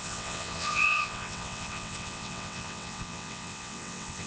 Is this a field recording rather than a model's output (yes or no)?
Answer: no